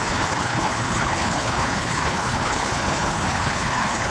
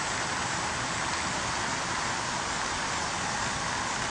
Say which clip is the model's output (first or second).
first